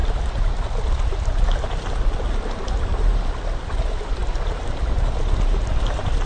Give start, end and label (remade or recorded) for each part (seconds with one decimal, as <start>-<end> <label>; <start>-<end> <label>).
0.0-6.3 recorded